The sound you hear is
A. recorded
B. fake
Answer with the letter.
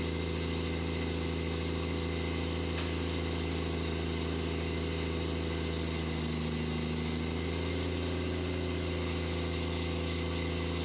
A